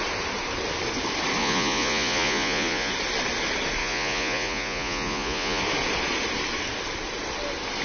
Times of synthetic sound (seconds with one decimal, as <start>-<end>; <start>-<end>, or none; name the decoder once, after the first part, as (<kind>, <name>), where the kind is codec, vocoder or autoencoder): 1.4-2.9 (vocoder, Vocos); 3.8-5.6